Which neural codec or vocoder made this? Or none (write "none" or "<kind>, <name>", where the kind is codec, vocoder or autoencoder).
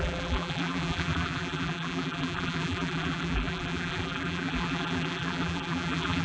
vocoder, BigVGAN v2